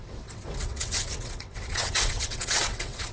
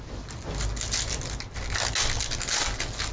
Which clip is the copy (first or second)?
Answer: first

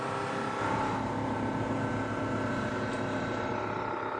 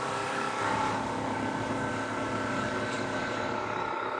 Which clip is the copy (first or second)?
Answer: second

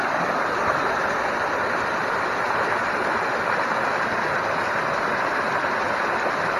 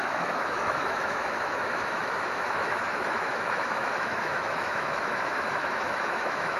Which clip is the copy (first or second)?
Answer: second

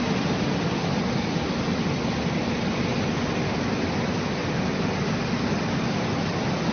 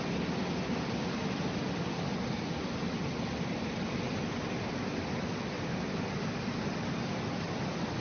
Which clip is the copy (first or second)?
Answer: second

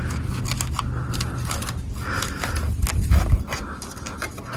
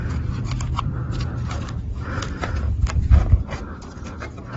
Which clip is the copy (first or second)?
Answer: second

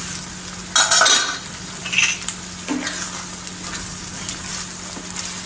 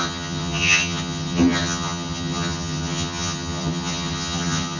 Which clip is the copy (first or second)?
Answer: second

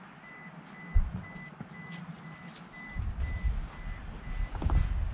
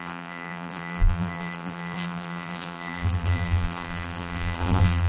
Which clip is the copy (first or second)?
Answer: second